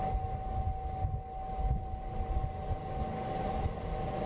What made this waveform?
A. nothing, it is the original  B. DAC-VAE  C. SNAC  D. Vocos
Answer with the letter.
A